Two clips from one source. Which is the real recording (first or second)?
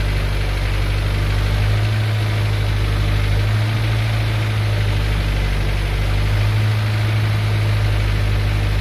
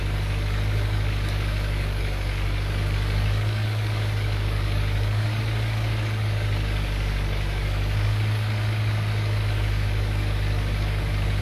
first